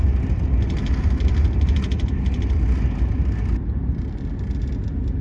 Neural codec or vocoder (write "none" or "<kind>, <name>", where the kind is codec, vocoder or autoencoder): none